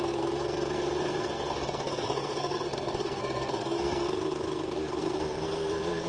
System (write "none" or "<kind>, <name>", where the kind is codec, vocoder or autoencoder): codec, SNAC